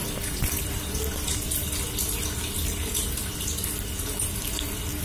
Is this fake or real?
real